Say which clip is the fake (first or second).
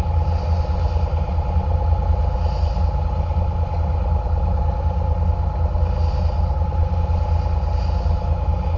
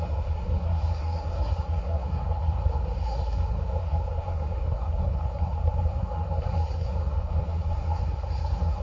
second